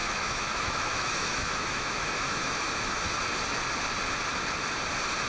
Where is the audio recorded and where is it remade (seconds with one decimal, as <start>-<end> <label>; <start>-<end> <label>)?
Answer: 0.0-3.2 remade; 3.2-5.3 recorded